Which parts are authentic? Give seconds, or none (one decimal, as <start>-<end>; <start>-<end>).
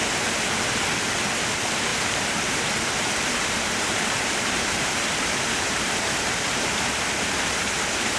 0.0-1.9; 6.8-8.2